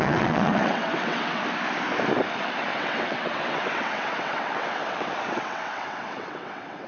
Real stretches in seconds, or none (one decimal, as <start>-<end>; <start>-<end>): 1.4-2.7